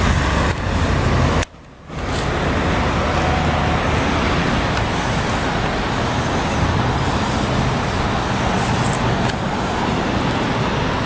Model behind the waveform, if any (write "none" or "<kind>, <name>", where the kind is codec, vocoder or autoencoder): none